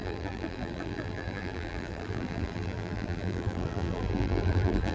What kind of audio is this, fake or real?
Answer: fake